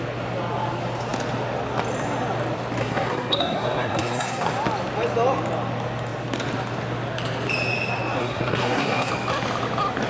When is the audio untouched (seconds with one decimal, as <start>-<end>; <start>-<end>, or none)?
0.0-2.8; 4.5-8.2; 9.1-10.1